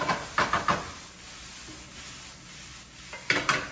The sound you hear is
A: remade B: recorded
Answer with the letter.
B